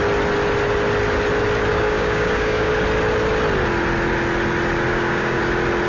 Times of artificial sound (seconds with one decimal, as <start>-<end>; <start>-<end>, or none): 1.7-2.7; 4.9-5.4